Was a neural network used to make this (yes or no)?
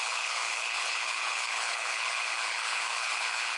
yes